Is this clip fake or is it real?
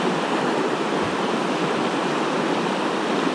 real